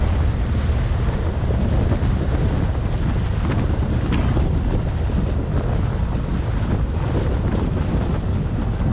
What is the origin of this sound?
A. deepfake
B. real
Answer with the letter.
B